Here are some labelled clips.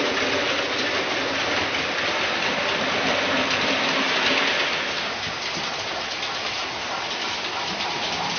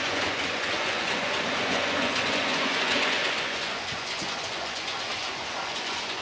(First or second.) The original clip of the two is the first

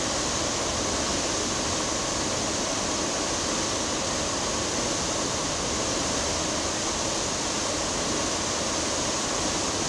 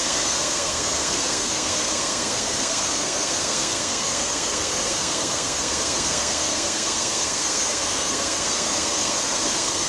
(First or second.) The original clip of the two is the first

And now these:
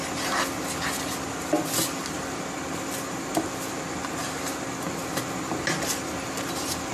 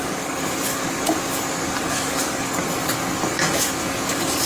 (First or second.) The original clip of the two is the first